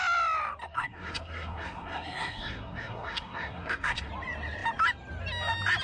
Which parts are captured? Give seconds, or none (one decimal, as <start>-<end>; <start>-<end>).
0.0-0.6; 4.1-5.8